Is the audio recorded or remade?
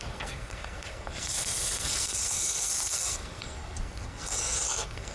remade